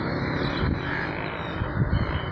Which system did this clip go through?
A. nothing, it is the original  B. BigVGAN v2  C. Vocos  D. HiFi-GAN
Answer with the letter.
A